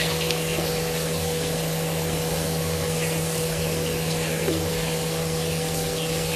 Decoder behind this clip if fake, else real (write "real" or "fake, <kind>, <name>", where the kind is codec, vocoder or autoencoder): fake, codec, SNAC